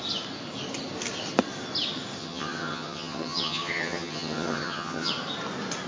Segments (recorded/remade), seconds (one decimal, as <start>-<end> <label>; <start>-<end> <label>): 0.0-2.2 recorded; 2.2-5.1 remade; 5.1-5.9 recorded